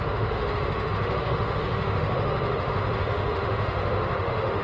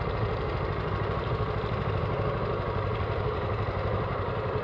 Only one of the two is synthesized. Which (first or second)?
first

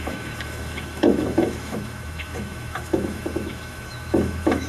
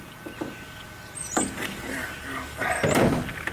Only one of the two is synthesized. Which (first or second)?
first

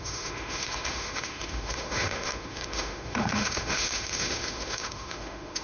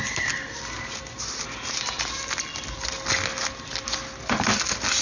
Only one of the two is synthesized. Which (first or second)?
first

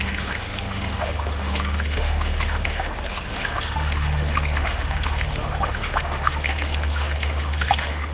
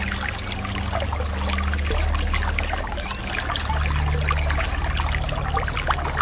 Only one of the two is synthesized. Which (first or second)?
first